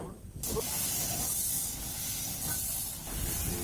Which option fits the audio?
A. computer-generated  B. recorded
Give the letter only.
B